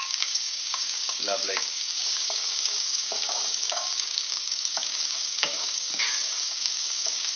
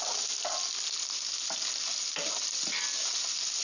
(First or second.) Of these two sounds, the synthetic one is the first